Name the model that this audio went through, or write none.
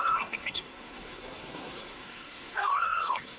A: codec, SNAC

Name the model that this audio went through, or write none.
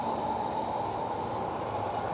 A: none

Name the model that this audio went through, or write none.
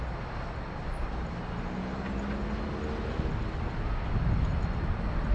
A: none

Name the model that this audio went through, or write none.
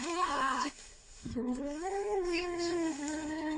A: codec, SNAC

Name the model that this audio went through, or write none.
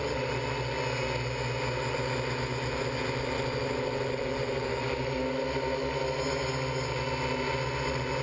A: none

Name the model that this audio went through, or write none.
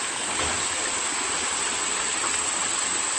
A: none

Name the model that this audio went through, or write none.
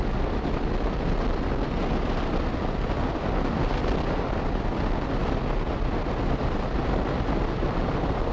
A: none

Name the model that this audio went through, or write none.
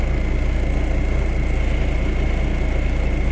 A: none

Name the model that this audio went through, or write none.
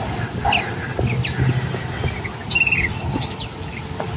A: none